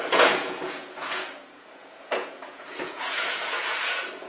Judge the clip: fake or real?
fake